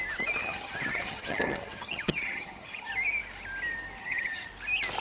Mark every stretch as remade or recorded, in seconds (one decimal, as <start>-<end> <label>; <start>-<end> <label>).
0.0-0.4 recorded; 0.4-2.9 remade; 2.9-4.0 recorded; 4.0-4.5 remade; 4.5-5.0 recorded